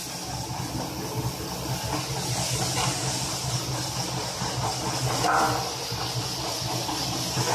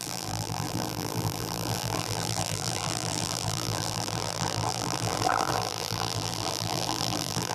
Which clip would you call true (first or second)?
first